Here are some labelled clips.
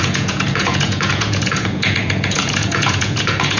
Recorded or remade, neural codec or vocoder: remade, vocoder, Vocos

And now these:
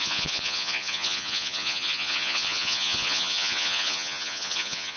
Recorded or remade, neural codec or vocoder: remade, vocoder, Vocos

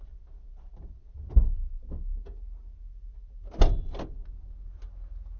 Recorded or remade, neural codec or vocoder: recorded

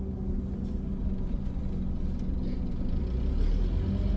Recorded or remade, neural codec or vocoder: recorded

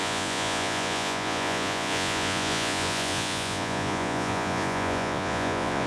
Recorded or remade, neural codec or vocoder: remade, vocoder, Vocos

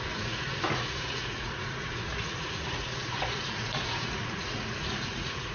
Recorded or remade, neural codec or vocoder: remade, vocoder, Vocos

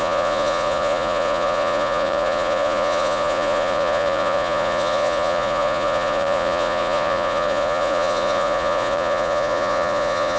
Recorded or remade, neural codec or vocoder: remade, vocoder, Vocos